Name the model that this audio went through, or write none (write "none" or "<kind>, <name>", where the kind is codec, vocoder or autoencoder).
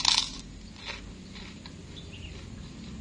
none